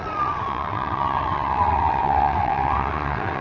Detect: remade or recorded remade